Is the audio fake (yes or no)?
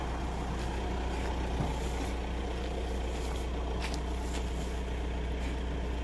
no